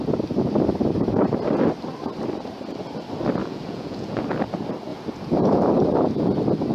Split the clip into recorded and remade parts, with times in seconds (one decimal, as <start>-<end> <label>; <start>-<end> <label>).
0.0-3.4 recorded; 3.4-4.3 remade; 4.3-4.9 recorded; 4.9-5.6 remade; 5.6-6.7 recorded